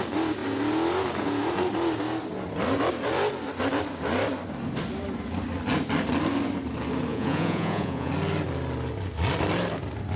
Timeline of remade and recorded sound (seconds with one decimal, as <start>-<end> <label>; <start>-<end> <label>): 0.0-7.1 recorded; 7.1-8.1 remade; 8.1-10.2 recorded